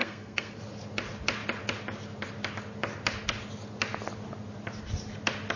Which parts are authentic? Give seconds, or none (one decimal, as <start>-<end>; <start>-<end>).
0.6-5.6